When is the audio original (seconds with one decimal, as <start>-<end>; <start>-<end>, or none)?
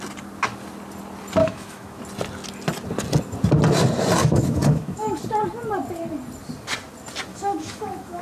0.0-1.4; 2.0-4.2; 5.2-7.3